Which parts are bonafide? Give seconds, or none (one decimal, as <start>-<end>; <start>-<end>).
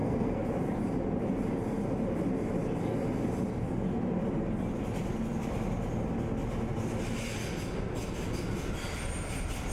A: 0.5-9.7